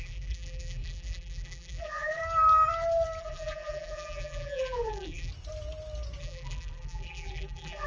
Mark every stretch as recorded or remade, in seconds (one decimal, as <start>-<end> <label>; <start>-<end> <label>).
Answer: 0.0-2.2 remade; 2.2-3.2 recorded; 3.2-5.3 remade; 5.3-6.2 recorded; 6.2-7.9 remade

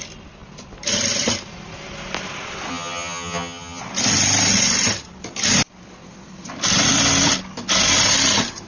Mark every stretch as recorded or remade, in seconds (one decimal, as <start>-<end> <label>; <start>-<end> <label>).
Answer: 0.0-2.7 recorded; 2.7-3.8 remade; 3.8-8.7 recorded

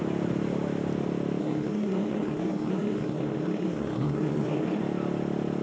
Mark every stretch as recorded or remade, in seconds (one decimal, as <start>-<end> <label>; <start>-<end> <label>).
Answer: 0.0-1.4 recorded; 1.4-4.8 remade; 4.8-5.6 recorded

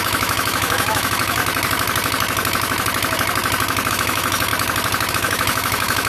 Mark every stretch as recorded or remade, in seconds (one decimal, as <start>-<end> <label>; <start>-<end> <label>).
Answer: 0.0-1.4 remade; 1.4-3.9 recorded; 3.9-4.5 remade; 4.5-5.1 recorded; 5.1-6.1 remade

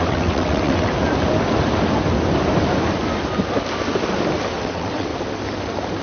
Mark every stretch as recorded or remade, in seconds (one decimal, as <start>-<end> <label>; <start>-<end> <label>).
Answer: 0.0-0.9 remade; 0.9-4.5 recorded; 4.5-5.1 remade; 5.1-6.0 recorded

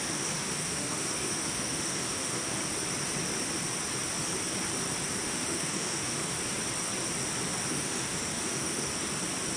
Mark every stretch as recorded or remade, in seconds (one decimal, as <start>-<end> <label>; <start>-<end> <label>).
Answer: 0.0-2.6 remade; 2.6-5.2 recorded; 5.2-6.4 remade; 6.4-7.7 recorded; 7.7-8.9 remade; 8.9-9.6 recorded

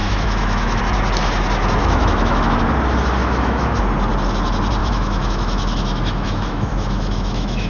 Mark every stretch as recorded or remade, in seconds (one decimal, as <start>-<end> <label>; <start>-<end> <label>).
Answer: 0.0-0.8 remade; 0.8-1.8 recorded; 1.8-2.6 remade; 2.6-3.2 recorded; 3.2-3.8 remade; 3.8-4.8 recorded; 4.8-7.7 remade